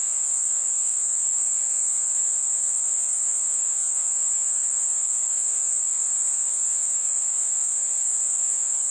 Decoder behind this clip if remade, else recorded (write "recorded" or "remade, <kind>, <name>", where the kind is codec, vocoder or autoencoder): remade, vocoder, Vocos